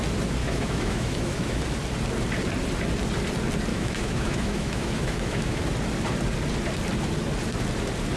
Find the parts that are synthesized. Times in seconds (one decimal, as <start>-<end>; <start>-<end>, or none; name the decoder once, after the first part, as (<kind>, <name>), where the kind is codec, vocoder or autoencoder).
0.4-1.6 (autoencoder, DAC-VAE); 3.7-5.6